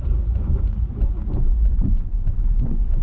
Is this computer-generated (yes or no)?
yes